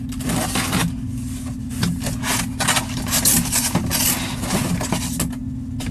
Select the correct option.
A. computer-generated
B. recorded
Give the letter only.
B